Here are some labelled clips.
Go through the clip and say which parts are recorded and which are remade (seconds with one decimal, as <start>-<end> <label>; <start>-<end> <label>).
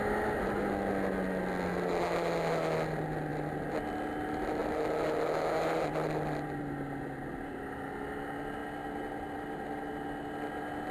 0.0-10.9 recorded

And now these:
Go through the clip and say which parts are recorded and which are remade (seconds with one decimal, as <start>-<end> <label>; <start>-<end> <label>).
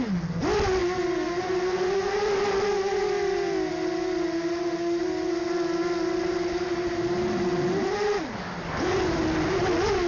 0.0-10.1 recorded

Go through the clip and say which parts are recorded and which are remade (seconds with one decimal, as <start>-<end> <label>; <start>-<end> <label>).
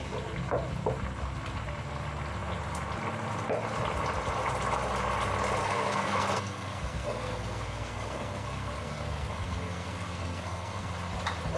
0.0-5.6 recorded; 5.6-10.9 remade; 10.9-11.6 recorded